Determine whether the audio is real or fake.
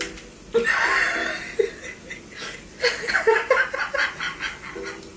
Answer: real